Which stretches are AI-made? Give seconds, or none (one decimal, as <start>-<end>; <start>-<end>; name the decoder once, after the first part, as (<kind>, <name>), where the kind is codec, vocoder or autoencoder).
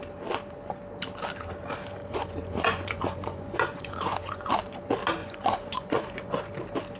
2.0-4.5 (vocoder, Vocos); 5.2-6.3